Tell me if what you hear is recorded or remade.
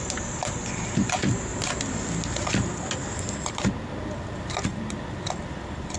recorded